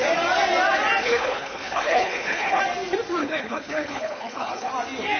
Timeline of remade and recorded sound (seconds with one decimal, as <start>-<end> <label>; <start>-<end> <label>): 0.0-1.0 recorded; 1.0-2.6 remade; 2.6-3.2 recorded; 3.2-4.7 remade; 4.7-5.2 recorded